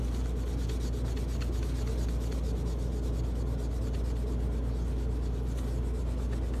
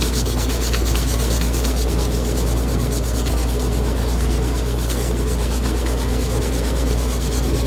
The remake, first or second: second